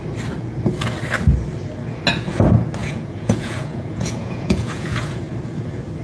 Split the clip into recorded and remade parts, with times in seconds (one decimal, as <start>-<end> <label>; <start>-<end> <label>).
0.0-2.8 recorded; 2.8-5.2 remade; 5.2-6.0 recorded